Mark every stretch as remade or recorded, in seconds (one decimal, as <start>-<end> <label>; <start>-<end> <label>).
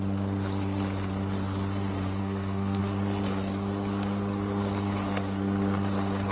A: 0.0-2.2 recorded; 2.2-2.8 remade; 2.8-6.3 recorded